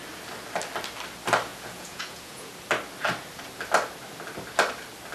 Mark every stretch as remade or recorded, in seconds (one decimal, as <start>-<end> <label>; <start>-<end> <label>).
0.0-1.5 recorded; 1.5-2.5 remade; 2.5-5.1 recorded